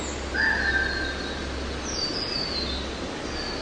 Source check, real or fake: real